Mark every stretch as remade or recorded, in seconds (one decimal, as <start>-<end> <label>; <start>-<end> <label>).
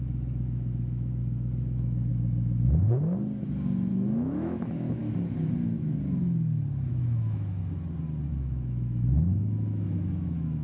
0.0-2.1 remade; 2.1-3.9 recorded; 3.9-5.0 remade; 5.0-6.9 recorded; 6.9-7.6 remade; 7.6-8.3 recorded; 8.3-10.6 remade